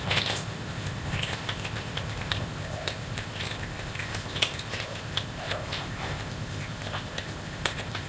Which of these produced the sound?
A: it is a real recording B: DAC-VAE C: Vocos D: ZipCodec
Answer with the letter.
D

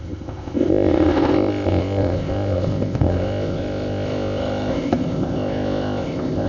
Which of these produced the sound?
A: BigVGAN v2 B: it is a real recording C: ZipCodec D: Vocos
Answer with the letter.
C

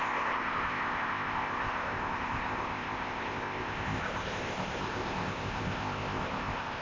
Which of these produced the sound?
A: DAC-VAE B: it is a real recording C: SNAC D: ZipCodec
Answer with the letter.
D